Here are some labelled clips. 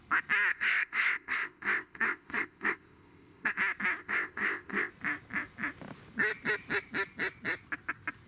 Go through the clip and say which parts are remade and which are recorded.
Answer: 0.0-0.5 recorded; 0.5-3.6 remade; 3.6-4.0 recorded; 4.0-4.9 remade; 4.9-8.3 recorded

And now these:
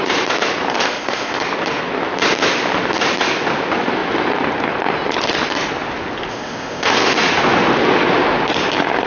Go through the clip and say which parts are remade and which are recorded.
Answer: 0.0-0.7 recorded; 0.7-1.4 remade; 1.4-6.3 recorded; 6.3-7.1 remade; 7.1-9.1 recorded

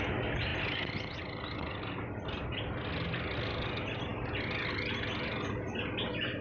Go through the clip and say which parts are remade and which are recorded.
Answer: 0.0-6.4 recorded

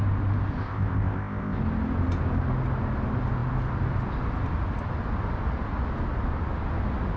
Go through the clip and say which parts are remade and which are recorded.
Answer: 0.0-0.6 recorded; 0.6-1.6 remade; 1.6-7.2 recorded

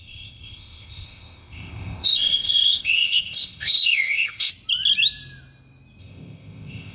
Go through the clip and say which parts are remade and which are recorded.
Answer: 0.0-4.5 remade; 4.5-6.0 recorded; 6.0-6.9 remade

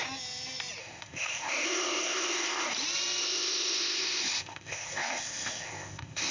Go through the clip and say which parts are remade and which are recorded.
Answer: 0.0-0.8 recorded; 0.8-2.7 remade; 2.7-3.2 recorded; 3.2-6.3 remade